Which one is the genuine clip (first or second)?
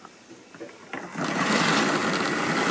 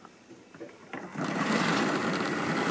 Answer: first